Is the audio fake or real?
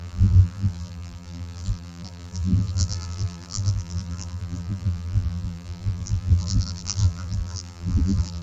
fake